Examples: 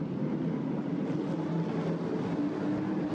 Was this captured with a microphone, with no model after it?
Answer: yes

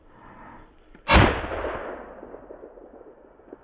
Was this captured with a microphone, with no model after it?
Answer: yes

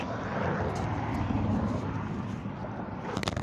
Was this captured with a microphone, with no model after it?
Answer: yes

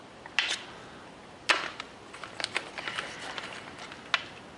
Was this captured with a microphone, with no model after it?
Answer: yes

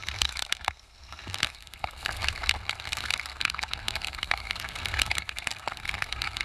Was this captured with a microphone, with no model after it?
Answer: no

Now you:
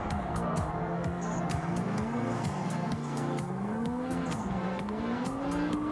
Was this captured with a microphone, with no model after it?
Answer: no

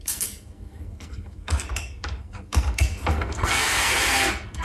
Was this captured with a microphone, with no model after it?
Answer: no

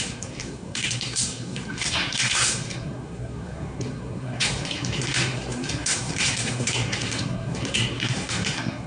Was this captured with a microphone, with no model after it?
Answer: no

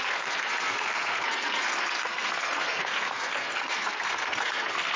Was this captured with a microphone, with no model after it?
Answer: no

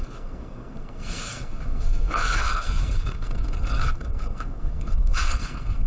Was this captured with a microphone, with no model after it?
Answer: no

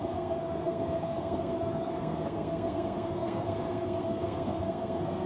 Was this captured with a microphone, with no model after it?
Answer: no